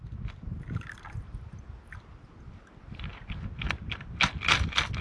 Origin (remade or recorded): recorded